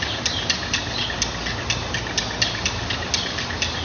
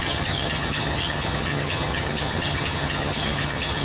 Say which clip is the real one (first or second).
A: first